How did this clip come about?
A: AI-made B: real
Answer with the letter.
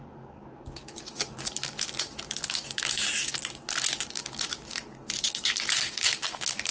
A